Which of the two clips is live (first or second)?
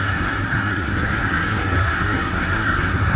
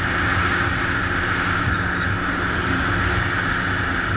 second